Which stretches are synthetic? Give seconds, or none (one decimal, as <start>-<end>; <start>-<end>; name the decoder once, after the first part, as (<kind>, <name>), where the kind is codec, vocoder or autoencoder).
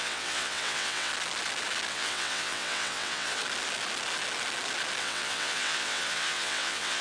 0.0-1.1 (vocoder, WaveNeXt); 1.9-3.4; 5.0-7.0